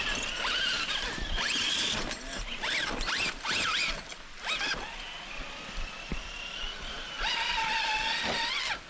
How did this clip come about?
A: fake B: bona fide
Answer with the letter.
B